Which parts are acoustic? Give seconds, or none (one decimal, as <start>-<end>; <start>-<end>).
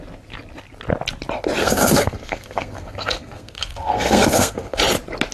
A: 0.0-1.6; 4.8-5.3